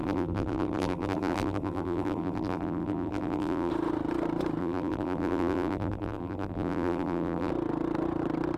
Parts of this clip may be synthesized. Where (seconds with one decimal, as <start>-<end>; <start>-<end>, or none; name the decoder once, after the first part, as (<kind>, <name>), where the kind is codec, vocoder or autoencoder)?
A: 0.0-3.7 (vocoder, BigVGAN v2); 4.6-7.5